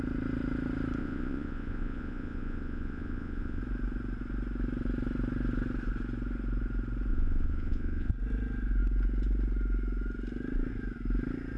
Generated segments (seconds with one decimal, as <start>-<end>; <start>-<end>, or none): 1.0-3.6; 7.1-8.1